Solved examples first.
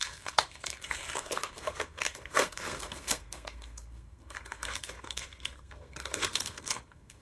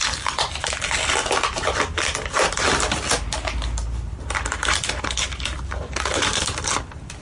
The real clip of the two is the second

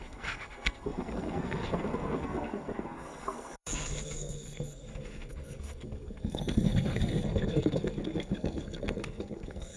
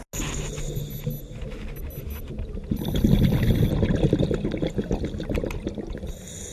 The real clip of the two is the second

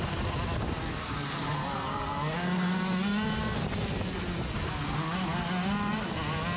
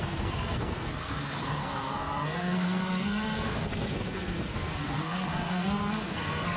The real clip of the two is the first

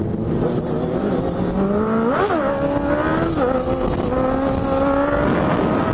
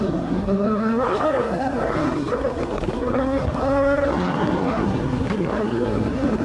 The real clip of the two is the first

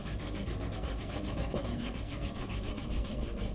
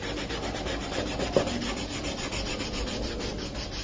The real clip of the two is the second